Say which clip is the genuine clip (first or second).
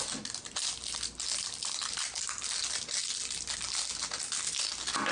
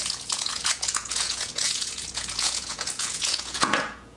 first